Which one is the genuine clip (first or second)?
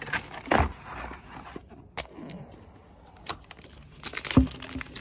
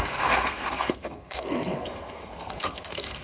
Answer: first